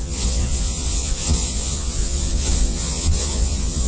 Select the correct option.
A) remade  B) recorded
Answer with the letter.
A